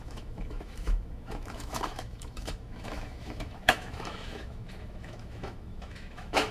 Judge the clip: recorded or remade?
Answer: remade